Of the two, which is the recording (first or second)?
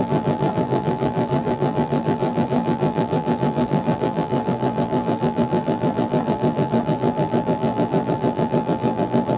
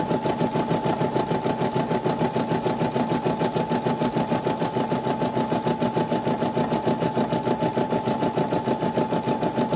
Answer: second